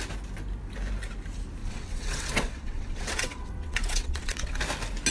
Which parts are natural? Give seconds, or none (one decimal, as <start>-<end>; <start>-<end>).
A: 0.0-1.6; 4.6-5.1